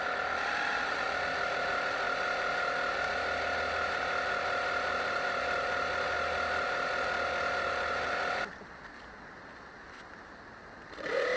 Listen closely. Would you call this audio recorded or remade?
recorded